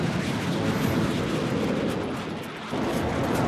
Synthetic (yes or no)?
no